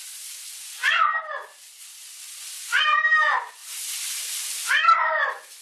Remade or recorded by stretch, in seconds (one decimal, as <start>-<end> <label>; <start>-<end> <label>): 0.0-5.6 recorded